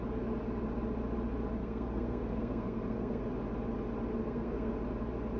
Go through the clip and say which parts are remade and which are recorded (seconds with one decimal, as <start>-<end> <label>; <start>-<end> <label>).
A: 0.0-1.6 recorded; 1.6-3.2 remade; 3.2-4.2 recorded; 4.2-4.7 remade; 4.7-5.4 recorded